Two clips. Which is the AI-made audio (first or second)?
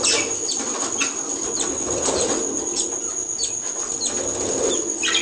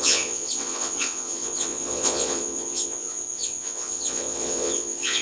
second